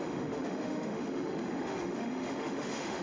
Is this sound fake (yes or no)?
yes